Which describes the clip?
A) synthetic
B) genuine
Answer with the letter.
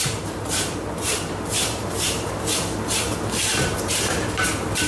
A